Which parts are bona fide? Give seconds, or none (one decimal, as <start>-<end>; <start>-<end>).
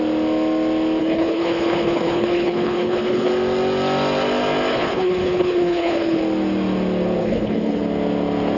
0.0-1.0; 3.3-4.7; 6.2-7.2; 7.8-8.6